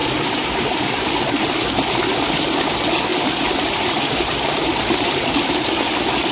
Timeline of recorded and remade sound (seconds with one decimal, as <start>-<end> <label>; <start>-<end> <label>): 0.0-1.2 remade; 1.2-3.1 recorded; 3.1-5.8 remade; 5.8-6.3 recorded